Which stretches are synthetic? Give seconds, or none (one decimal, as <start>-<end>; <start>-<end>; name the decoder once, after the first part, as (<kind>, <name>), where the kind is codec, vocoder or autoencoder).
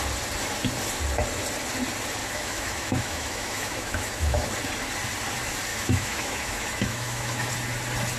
2.2-4.5 (autoencoder, DAC-VAE); 5.7-7.5